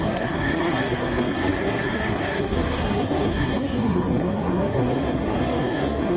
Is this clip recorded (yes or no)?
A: no